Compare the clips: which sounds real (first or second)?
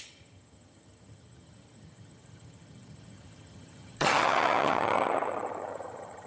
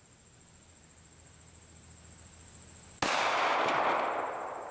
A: second